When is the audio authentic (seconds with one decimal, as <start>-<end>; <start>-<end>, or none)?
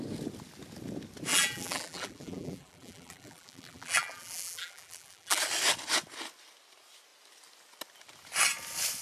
0.0-1.3; 5.4-9.0